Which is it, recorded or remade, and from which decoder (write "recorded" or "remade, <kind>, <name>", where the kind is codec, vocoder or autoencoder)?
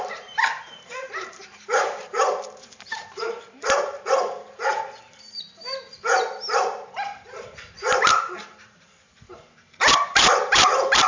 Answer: remade, vocoder, BigVGAN v2